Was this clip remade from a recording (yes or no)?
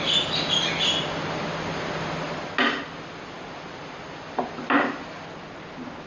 no